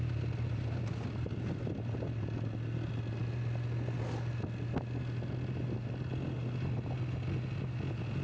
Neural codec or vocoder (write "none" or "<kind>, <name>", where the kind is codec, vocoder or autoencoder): none